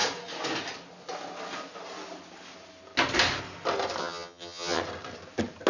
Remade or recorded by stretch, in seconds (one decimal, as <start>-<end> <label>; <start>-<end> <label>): 0.0-4.0 recorded; 4.0-4.8 remade; 4.8-5.7 recorded